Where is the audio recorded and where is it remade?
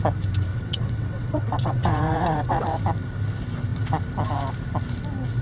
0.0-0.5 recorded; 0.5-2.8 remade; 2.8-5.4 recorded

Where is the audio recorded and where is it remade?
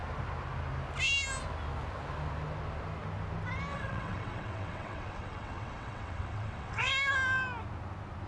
0.0-3.7 recorded; 3.7-6.9 remade; 6.9-8.3 recorded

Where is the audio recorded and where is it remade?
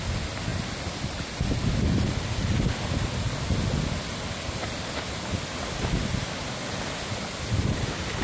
0.0-8.2 recorded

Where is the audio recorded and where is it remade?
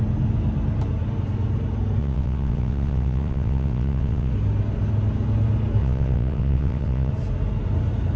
0.0-2.0 recorded; 2.0-4.3 remade; 4.3-5.8 recorded; 5.8-7.1 remade; 7.1-8.2 recorded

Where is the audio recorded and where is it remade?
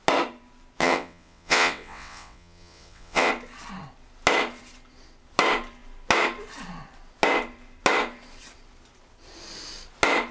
0.0-0.8 recorded; 0.8-3.3 remade; 3.3-10.3 recorded